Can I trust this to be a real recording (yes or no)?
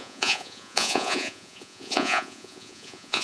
no